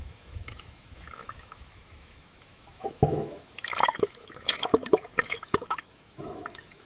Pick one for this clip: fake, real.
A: fake